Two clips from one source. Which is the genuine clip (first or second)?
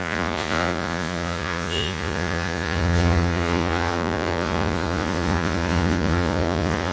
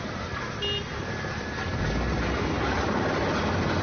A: second